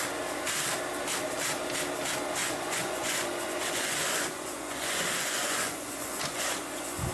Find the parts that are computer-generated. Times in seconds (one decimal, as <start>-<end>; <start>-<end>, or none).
2.4-7.1